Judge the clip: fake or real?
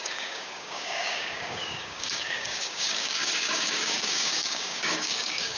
fake